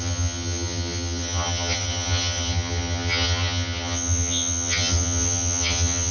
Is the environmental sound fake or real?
fake